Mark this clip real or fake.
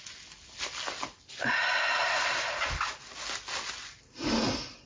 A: real